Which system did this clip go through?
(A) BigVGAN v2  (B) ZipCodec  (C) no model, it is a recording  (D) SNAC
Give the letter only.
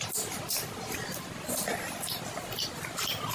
C